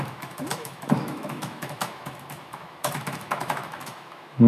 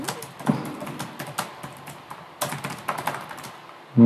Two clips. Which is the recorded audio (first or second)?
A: second